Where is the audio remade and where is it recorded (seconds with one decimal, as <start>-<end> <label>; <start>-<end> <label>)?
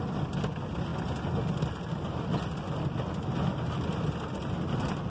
0.0-5.1 recorded